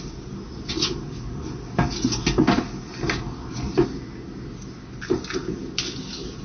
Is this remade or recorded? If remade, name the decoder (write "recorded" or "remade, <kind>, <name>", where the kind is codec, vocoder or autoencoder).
recorded